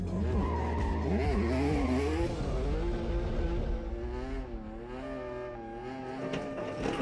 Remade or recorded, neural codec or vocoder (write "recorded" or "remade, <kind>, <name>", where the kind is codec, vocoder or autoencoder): recorded